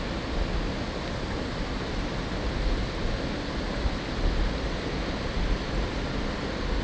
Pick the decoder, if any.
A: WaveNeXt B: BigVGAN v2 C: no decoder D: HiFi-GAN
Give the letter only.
C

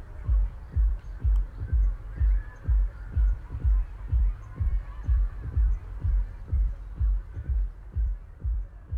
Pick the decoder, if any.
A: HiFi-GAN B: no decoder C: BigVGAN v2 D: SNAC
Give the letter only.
C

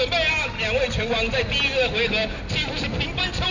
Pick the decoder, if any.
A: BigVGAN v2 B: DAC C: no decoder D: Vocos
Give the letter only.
C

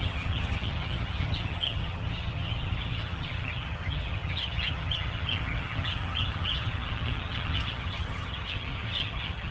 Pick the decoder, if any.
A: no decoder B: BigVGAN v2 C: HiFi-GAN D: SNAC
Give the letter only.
C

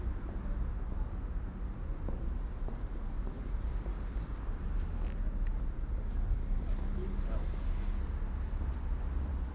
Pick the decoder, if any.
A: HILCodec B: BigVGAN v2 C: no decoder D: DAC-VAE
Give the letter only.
C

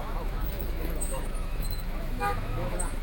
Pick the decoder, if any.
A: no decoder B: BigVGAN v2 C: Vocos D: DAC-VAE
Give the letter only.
D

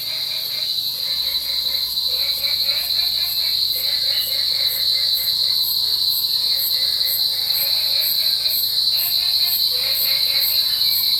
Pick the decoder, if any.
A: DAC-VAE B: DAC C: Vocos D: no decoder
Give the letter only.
D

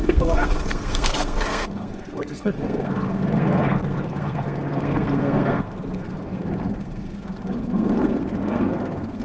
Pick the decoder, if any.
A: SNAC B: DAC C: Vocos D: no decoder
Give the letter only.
A